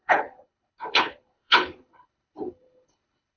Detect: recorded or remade remade